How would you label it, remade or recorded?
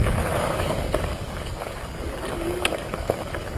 remade